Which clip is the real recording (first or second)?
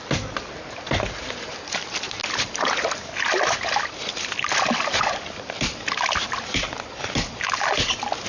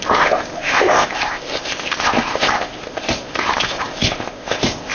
first